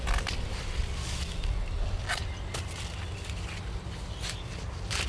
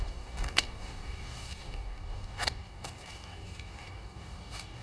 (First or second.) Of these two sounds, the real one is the first